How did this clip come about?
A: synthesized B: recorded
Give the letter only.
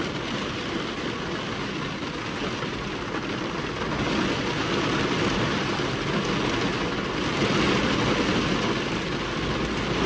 B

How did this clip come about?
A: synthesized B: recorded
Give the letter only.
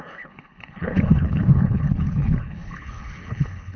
A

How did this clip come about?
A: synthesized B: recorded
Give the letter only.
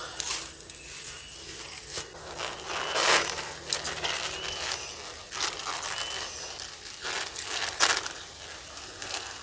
B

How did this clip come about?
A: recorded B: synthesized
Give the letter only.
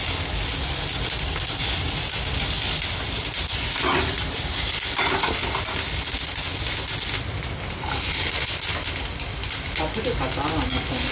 A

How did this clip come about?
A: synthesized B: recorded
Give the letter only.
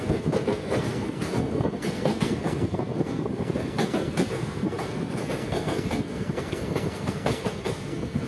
A